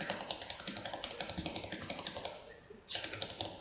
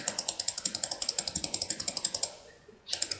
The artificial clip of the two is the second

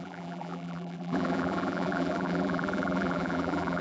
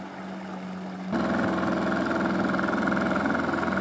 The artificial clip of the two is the first